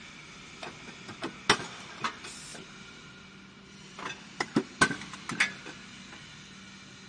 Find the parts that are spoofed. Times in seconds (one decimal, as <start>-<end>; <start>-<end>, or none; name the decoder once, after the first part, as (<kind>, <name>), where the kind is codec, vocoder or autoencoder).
none

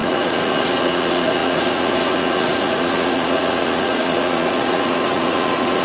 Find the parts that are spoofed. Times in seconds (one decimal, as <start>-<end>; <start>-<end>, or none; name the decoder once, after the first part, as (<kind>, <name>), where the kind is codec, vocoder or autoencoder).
0.0-5.8 (vocoder, Vocos)